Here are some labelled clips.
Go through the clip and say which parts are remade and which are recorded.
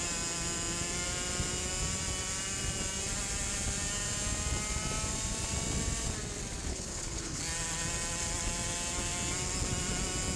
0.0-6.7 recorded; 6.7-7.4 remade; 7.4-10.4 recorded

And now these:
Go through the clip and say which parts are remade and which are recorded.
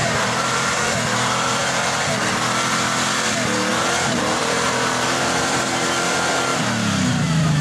0.0-0.8 remade; 0.8-3.7 recorded; 3.7-5.5 remade; 5.5-6.5 recorded; 6.5-7.6 remade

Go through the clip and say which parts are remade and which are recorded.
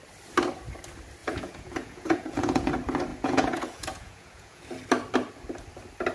0.0-1.2 recorded; 1.2-2.7 remade; 2.7-3.1 recorded; 3.1-4.6 remade; 4.6-6.1 recorded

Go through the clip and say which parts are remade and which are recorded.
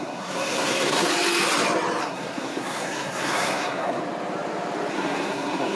0.0-1.1 remade; 1.1-2.0 recorded; 2.0-4.0 remade; 4.0-4.9 recorded; 4.9-5.8 remade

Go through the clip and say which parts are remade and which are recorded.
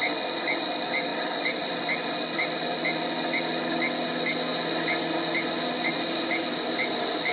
0.0-1.1 recorded; 1.1-1.7 remade; 1.7-7.3 recorded